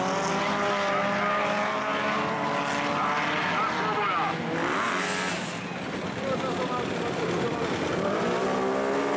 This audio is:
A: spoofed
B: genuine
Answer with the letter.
B